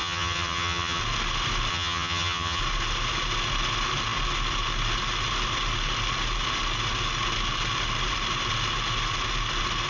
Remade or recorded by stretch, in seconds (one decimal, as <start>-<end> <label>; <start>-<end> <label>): 0.0-1.0 remade; 1.0-1.7 recorded; 1.7-2.6 remade; 2.6-9.9 recorded